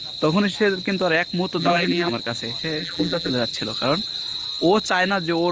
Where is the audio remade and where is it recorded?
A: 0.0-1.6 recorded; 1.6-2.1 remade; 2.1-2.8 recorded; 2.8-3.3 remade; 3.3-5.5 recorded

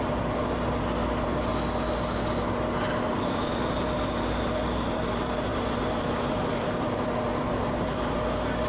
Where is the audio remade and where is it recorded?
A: 0.0-1.5 remade; 1.5-3.0 recorded; 3.0-8.7 remade

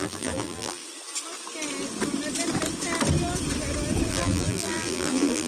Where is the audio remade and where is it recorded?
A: 0.0-0.8 remade; 0.8-4.1 recorded; 4.1-5.5 remade

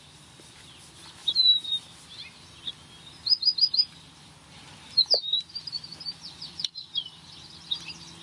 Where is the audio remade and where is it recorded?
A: 0.0-1.2 recorded; 1.2-2.7 remade; 2.7-4.7 recorded; 4.7-7.5 remade; 7.5-8.2 recorded

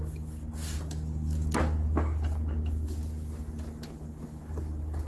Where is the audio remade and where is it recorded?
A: 0.0-5.1 recorded

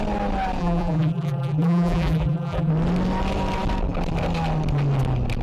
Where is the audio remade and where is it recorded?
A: 0.0-0.6 recorded; 0.6-2.7 remade; 2.7-5.4 recorded